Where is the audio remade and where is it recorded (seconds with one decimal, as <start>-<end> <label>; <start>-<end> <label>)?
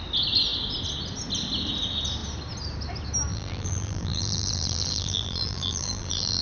0.0-3.3 recorded; 3.3-6.4 remade